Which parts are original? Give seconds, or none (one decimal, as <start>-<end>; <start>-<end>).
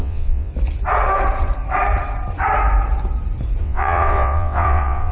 0.5-3.6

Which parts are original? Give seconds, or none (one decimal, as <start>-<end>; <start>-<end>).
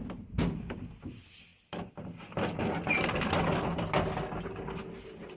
0.0-5.4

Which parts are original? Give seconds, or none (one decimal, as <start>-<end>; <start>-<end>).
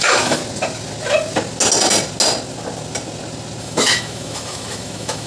0.4-3.6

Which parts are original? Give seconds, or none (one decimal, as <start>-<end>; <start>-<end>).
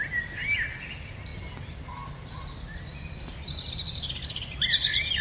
0.0-5.2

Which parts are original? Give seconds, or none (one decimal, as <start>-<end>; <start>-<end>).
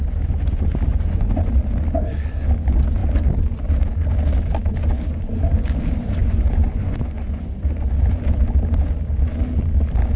0.0-0.9; 1.5-6.2; 7.5-10.2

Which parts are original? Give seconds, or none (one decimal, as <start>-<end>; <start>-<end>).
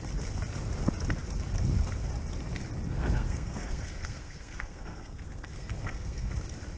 0.0-2.9; 6.3-6.8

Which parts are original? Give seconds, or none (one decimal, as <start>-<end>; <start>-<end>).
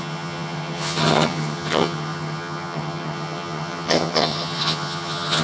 none